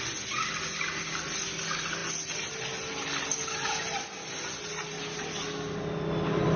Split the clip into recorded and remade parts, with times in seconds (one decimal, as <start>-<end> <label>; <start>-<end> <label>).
0.0-6.6 recorded